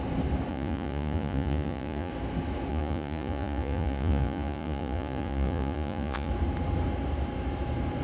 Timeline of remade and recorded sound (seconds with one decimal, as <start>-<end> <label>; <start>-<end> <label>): 0.0-0.5 recorded; 0.5-2.1 remade; 2.1-2.7 recorded; 2.7-6.3 remade; 6.3-8.0 recorded